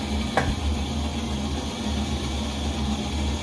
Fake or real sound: real